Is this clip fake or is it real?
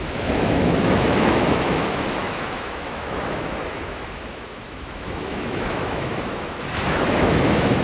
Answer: fake